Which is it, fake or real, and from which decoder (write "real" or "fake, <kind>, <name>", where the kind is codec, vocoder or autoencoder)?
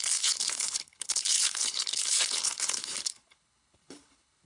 fake, codec, HILCodec